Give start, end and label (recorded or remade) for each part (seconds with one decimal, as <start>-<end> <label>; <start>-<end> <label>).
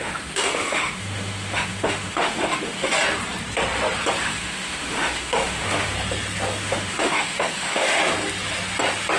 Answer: 0.0-2.9 remade; 2.9-4.2 recorded; 4.2-5.9 remade; 5.9-6.6 recorded; 6.6-8.0 remade; 8.0-9.2 recorded